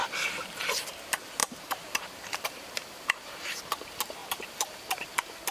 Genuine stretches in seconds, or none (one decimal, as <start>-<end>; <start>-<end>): 0.0-1.4; 3.6-4.2